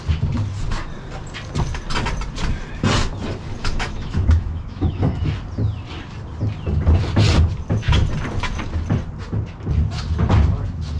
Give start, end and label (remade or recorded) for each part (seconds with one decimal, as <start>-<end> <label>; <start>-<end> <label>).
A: 0.0-3.6 recorded; 3.6-5.0 remade; 5.0-11.0 recorded